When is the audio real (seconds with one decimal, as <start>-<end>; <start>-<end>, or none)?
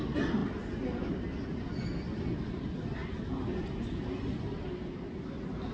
0.0-5.7